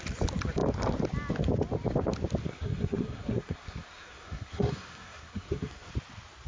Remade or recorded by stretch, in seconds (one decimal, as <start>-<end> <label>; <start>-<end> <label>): 0.0-2.5 recorded; 2.5-5.9 remade; 5.9-6.5 recorded